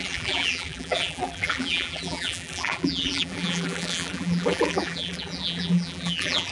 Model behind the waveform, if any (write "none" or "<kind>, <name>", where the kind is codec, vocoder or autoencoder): vocoder, BigVGAN v2